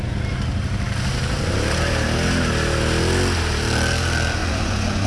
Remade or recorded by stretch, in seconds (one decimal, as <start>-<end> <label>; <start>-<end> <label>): 0.0-4.4 recorded; 4.4-5.1 remade